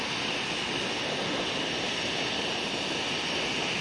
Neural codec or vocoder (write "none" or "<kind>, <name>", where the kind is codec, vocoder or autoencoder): none